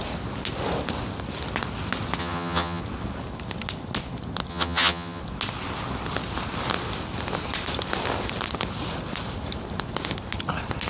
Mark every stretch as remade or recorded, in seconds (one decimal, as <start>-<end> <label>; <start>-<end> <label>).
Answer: 0.0-2.2 recorded; 2.2-2.8 remade; 2.8-4.5 recorded; 4.5-5.2 remade; 5.2-10.9 recorded